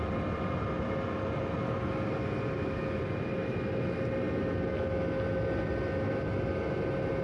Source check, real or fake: real